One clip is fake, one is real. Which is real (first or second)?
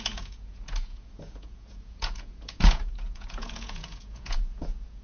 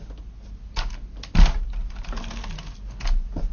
second